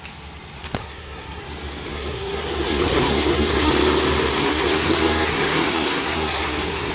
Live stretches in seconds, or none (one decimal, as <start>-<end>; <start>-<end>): 0.0-0.8; 1.4-1.9; 3.7-4.4